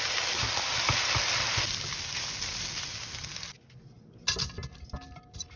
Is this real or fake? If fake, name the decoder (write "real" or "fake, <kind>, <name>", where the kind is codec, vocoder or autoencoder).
real